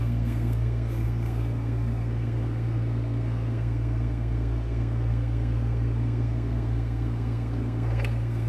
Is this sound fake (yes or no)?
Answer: yes